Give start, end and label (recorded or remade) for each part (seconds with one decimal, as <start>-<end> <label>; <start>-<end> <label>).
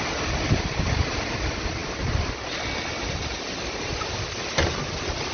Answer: 0.0-5.3 recorded